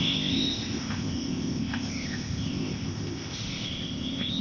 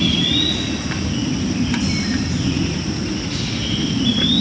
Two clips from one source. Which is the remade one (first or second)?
first